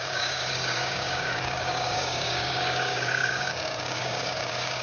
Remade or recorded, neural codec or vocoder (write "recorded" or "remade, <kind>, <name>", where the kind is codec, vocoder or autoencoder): remade, codec, DAC